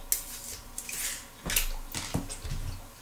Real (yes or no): yes